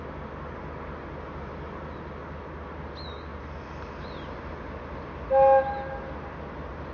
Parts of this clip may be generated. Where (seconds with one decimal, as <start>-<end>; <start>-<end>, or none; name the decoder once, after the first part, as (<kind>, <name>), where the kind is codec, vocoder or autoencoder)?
none